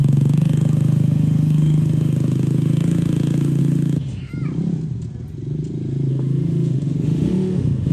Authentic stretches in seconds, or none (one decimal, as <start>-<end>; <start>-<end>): 4.3-6.1